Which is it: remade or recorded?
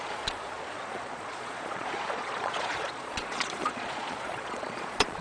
remade